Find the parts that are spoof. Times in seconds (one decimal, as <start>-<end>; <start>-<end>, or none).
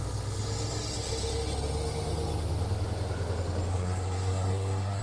3.7-5.0